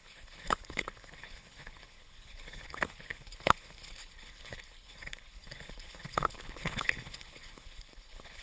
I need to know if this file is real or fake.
fake